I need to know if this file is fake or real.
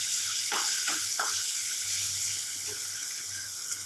fake